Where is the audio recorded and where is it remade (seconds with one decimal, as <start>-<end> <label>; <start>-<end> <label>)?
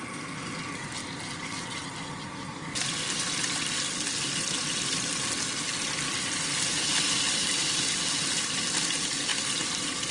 0.0-1.0 recorded; 1.0-3.9 remade; 3.9-6.9 recorded; 6.9-8.6 remade; 8.6-10.1 recorded